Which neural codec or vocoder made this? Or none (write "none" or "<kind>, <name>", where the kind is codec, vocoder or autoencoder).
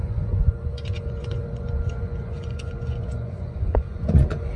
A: vocoder, Vocos